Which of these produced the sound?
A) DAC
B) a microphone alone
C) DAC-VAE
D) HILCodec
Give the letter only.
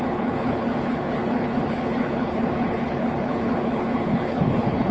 D